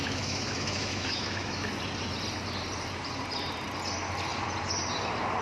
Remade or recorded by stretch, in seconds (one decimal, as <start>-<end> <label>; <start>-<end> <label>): 0.0-1.7 remade; 1.7-5.4 recorded